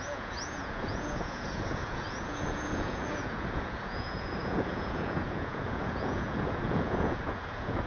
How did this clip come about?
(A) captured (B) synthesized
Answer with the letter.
B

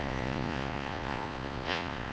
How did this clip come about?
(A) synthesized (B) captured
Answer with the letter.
A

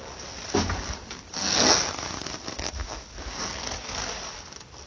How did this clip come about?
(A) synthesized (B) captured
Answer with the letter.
B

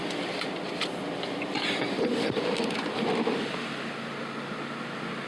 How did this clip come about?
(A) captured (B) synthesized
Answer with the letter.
A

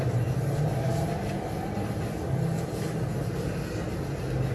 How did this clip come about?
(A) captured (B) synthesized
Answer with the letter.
A